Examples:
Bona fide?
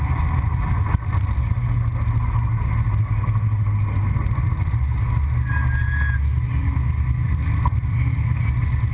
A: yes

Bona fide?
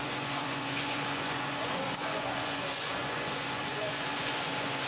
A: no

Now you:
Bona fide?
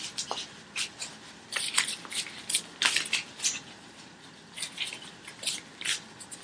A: yes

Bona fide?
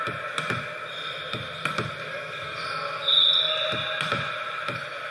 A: yes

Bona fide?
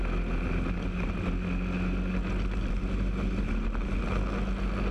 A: yes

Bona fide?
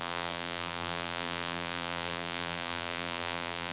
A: no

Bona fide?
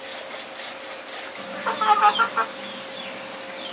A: yes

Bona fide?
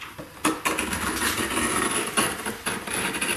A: yes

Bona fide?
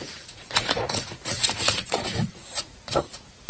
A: no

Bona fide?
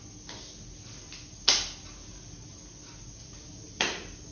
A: yes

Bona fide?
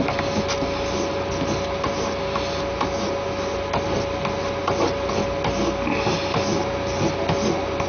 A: yes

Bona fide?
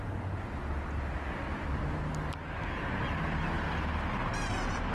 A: yes